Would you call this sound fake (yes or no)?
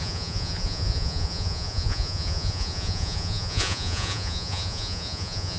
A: yes